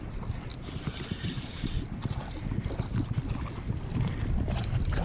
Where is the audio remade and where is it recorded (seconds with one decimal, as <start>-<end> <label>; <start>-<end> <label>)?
0.0-5.0 recorded